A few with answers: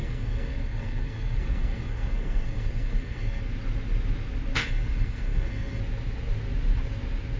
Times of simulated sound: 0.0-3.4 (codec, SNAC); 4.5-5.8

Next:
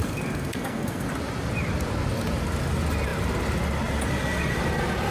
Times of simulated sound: 0.0-1.1 (codec, SNAC)

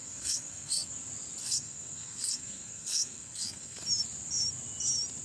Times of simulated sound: 0.0-0.9 (codec, SNAC); 1.4-3.8

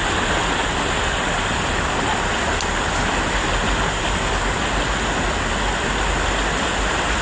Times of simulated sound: none

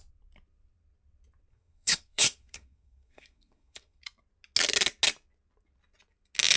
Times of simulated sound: 1.5-4.0 (codec, SNAC)

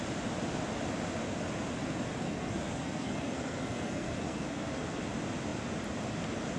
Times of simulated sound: 2.2-5.0 (codec, SNAC)